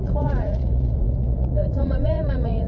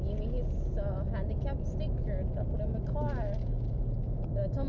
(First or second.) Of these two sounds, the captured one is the second